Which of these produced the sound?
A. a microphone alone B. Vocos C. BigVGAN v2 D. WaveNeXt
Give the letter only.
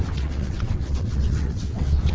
D